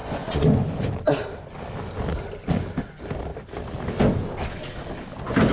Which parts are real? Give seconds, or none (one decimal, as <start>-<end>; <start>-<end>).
0.9-5.5